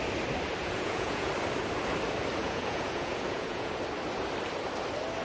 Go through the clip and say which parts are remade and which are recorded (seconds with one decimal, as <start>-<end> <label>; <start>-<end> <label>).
0.0-0.6 recorded; 0.6-1.3 remade; 1.3-2.4 recorded; 2.4-3.7 remade; 3.7-5.2 recorded